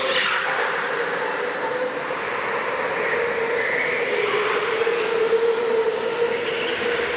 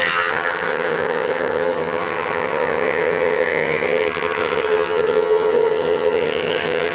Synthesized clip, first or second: second